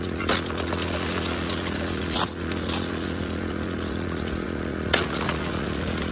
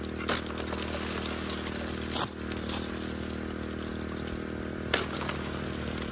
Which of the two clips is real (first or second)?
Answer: second